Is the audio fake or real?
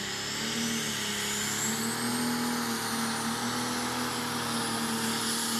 real